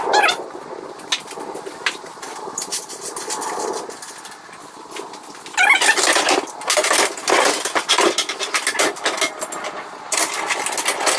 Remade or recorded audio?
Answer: recorded